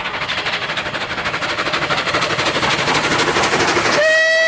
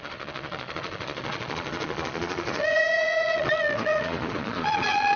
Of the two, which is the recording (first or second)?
first